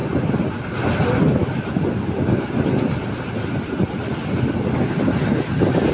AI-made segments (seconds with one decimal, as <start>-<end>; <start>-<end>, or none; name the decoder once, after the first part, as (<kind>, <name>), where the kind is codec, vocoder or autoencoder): none